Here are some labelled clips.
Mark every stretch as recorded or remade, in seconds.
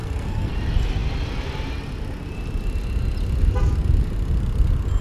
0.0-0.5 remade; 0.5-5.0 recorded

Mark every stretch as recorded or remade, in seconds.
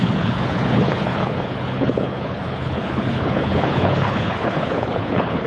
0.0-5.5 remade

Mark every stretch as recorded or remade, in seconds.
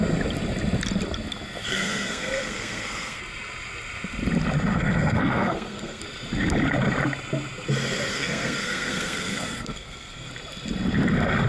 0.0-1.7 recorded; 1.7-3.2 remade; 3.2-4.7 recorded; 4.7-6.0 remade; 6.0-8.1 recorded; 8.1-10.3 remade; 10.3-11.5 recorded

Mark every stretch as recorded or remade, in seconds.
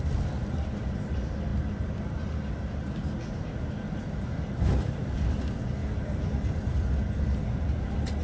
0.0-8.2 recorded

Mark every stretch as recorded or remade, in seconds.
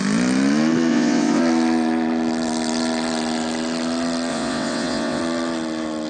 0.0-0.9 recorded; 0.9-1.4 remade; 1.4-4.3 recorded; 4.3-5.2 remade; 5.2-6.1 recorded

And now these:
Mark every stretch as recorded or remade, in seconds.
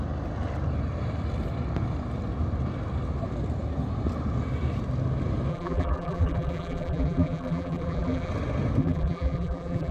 0.0-5.5 recorded; 5.5-8.3 remade; 8.3-8.8 recorded; 8.8-9.9 remade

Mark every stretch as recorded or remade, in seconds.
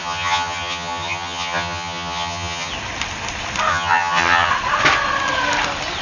0.0-2.7 remade; 2.7-3.7 recorded; 3.7-4.5 remade; 4.5-6.0 recorded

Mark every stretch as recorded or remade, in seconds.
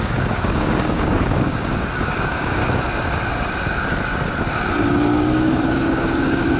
0.0-2.6 remade; 2.6-4.9 recorded; 4.9-6.6 remade